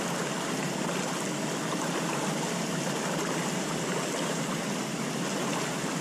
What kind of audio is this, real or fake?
real